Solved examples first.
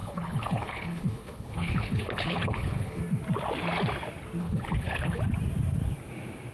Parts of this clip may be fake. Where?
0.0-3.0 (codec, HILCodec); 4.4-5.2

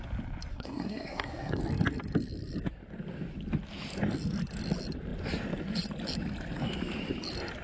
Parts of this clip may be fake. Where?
0.5-1.6 (codec, SNAC)

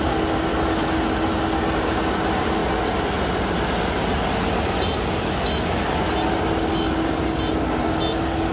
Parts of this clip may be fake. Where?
none

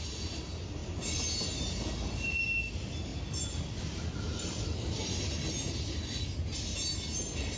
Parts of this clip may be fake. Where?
3.1-5.0 (vocoder, BigVGAN v2)

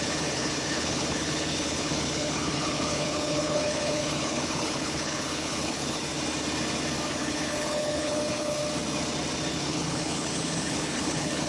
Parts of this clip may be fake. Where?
0.0-6.1 (codec, HILCodec); 7.1-8.6; 9.5-11.5

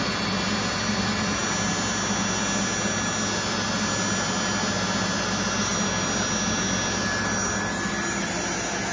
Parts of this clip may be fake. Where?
none

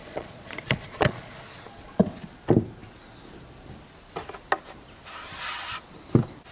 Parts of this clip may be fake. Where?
0.0-2.0 (vocoder, Vocos)